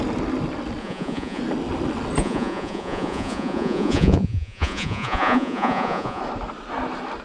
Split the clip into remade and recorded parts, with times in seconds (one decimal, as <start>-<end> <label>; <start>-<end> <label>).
0.0-0.8 recorded; 0.8-1.4 remade; 1.4-2.2 recorded; 2.2-6.2 remade; 6.2-7.2 recorded